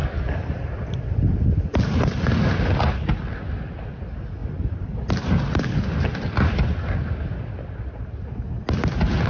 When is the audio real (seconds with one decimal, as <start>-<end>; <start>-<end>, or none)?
2.6-6.1; 6.7-9.3

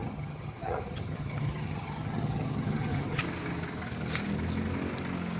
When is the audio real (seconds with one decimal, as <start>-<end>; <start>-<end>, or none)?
3.2-5.4

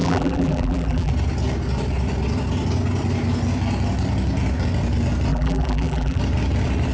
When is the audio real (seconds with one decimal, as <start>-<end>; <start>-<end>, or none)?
1.1-5.3; 6.2-6.9

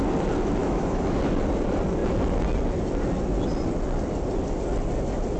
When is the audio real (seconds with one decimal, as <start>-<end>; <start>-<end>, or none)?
0.0-0.6; 1.2-5.4

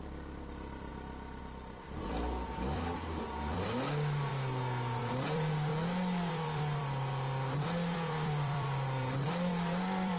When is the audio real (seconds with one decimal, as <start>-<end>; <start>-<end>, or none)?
0.9-1.4; 4.3-5.0; 5.7-6.3

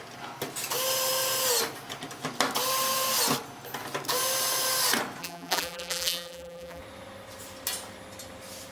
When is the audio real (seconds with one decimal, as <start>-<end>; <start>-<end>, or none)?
0.0-5.2; 6.8-8.7

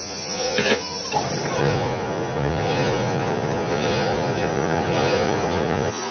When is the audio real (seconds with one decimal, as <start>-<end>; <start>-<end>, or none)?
1.0-1.6

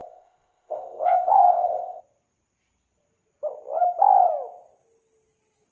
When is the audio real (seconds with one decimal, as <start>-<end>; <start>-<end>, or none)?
2.0-5.7